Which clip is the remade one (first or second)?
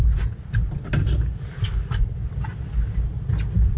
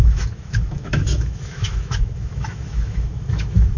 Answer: second